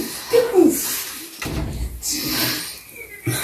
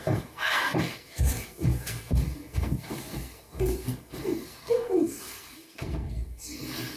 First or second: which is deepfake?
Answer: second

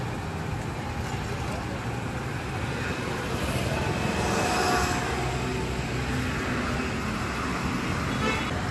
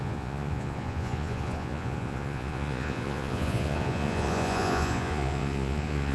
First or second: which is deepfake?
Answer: second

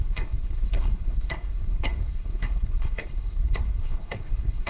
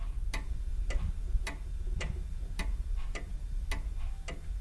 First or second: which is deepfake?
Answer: first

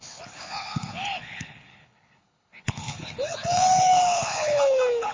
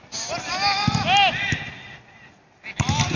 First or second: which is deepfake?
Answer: first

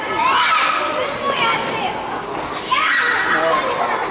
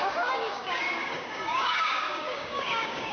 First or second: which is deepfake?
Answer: second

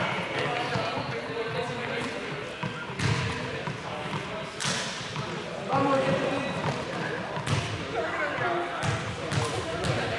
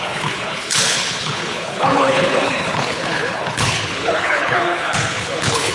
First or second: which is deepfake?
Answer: second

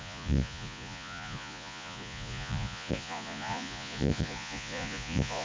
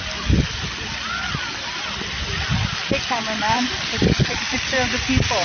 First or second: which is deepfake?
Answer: first